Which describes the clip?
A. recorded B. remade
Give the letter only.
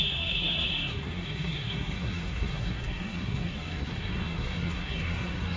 B